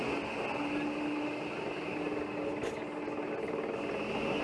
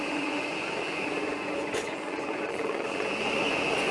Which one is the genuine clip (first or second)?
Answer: first